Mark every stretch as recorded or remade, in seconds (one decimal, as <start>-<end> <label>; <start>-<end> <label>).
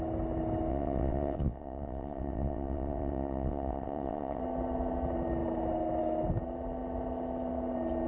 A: 0.0-0.7 recorded; 0.7-4.4 remade; 4.4-8.1 recorded